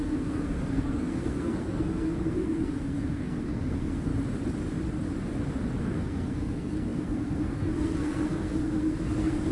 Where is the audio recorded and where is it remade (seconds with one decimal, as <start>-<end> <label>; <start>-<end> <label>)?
0.0-4.1 remade; 4.1-5.8 recorded; 5.8-9.5 remade